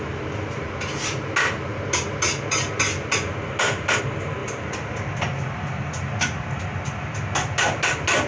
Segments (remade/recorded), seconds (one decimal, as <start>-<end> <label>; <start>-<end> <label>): 0.0-8.3 recorded